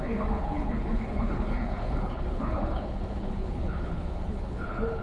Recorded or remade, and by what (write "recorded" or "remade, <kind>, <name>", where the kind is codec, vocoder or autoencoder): remade, codec, HILCodec